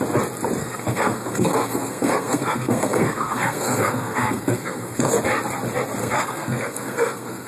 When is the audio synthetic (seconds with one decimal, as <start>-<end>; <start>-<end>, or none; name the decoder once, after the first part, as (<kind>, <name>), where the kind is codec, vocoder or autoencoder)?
0.6-5.1 (codec, SNAC); 6.0-7.5